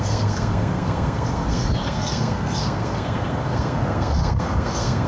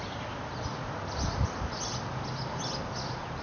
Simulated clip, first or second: first